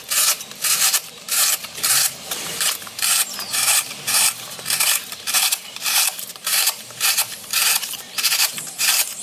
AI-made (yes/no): yes